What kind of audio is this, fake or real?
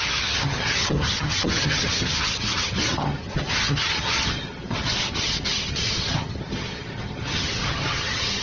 fake